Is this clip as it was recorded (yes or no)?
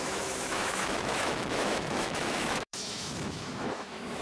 no